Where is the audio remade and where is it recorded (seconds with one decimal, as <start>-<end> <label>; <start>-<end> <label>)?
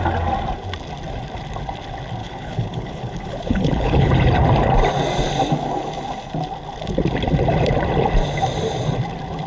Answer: 0.0-2.2 recorded; 2.2-4.1 remade; 4.1-9.5 recorded